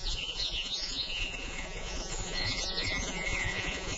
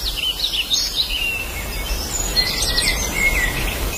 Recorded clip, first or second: second